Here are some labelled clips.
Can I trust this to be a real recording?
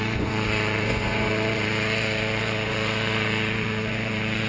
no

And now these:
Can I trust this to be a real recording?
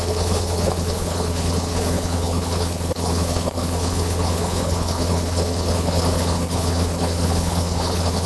no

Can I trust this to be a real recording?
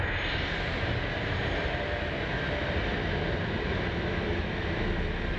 yes